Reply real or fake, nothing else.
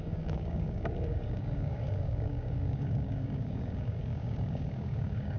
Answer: fake